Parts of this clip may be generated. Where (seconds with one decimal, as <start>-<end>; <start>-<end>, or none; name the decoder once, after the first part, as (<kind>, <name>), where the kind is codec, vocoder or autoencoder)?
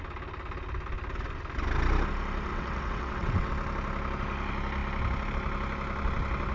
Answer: 2.5-3.5 (vocoder, WaveNeXt)